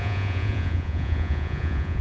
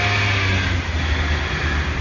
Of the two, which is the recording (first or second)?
second